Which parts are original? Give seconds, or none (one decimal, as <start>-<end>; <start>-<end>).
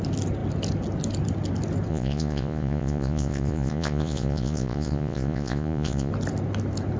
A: 0.0-1.9; 6.1-7.0